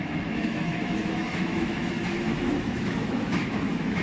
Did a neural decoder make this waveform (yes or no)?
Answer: yes